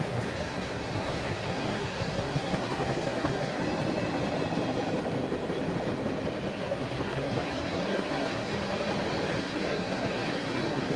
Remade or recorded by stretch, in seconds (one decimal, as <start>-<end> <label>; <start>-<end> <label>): 0.0-3.6 remade; 3.6-6.5 recorded; 6.5-8.5 remade; 8.5-9.4 recorded; 9.4-11.0 remade